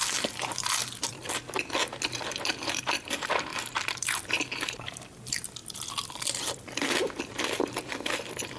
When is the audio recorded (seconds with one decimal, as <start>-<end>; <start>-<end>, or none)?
1.2-2.1